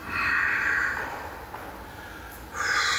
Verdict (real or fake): real